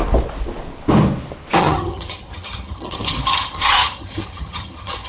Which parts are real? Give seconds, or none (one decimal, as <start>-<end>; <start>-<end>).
0.0-1.6